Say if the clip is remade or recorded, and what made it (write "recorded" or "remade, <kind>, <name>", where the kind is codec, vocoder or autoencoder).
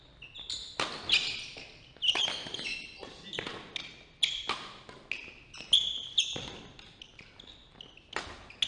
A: recorded